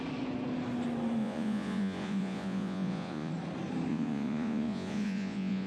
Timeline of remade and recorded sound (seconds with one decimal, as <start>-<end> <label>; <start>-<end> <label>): 0.0-1.2 recorded; 1.2-3.3 remade; 3.3-3.9 recorded; 3.9-5.7 remade